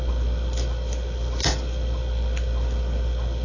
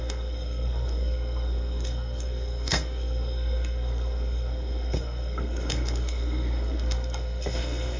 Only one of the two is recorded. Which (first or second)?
first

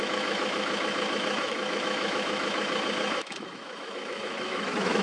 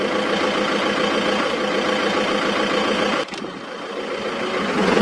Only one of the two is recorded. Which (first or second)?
second